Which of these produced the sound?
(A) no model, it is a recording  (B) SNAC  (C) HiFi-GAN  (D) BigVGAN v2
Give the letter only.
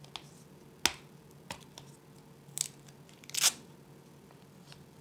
A